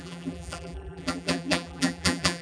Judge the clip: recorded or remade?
remade